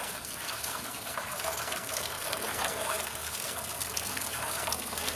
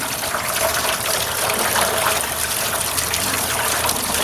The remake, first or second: first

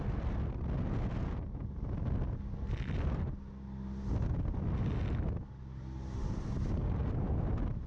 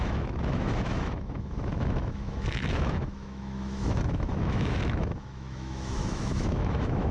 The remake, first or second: second